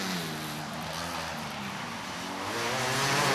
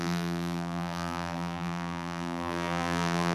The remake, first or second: second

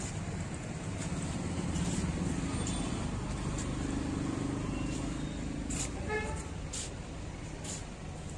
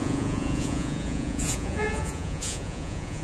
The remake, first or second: second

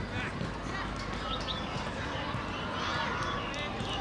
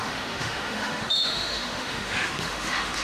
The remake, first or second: second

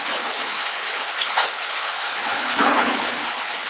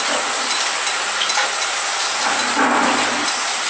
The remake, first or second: first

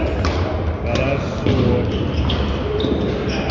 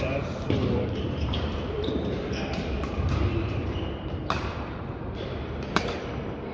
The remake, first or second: second